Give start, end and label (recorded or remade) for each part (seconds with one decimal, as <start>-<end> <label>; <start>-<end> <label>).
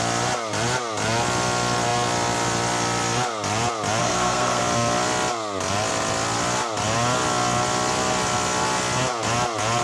0.0-4.0 recorded; 4.0-4.6 remade; 4.6-9.8 recorded